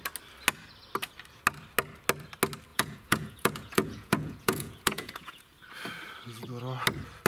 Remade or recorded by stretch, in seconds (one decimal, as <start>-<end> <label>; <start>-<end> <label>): 0.0-2.7 recorded; 2.7-5.4 remade; 5.4-7.3 recorded